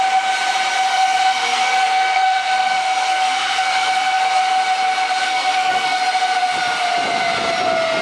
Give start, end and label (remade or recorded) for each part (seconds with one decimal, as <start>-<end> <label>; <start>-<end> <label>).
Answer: 0.0-0.9 recorded; 0.9-4.4 remade; 4.4-5.2 recorded; 5.2-6.0 remade; 6.0-8.0 recorded